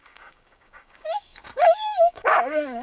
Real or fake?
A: fake